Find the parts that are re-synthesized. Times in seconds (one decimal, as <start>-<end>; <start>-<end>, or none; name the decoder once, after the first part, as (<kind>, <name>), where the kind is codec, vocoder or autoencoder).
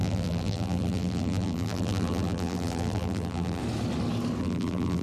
0.0-3.6 (vocoder, BigVGAN v2); 4.4-5.0